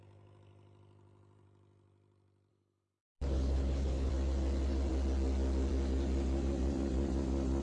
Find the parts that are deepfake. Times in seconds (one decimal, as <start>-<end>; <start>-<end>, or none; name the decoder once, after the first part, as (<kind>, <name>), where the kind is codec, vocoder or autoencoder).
2.5-4.1 (codec, HILCodec)